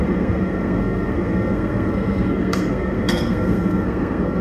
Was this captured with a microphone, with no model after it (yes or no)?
no